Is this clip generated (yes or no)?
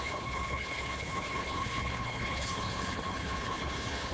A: yes